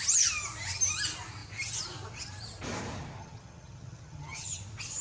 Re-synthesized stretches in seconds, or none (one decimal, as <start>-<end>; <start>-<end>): 3.2-4.6